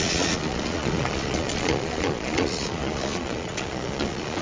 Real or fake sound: fake